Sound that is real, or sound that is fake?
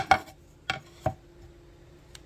real